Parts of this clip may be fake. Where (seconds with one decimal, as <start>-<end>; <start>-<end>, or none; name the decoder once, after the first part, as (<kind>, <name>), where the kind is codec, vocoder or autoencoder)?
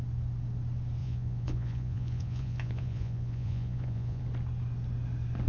1.0-4.2 (vocoder, Vocos)